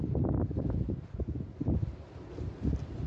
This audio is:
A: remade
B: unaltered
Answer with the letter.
B